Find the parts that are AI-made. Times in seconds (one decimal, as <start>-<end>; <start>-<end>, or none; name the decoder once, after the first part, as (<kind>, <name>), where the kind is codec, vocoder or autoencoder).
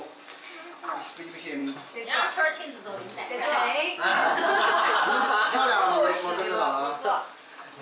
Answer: none